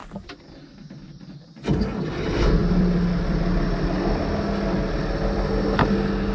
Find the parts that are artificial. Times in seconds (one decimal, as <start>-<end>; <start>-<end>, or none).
none